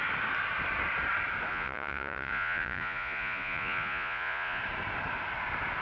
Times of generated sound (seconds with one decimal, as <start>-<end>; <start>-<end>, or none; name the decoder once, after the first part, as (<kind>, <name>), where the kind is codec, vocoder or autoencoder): 1.5-4.6 (vocoder, Vocos)